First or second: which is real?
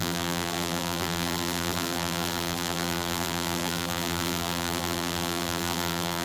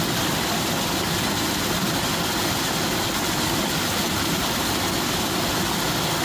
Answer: second